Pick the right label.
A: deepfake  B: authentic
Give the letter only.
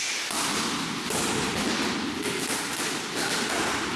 B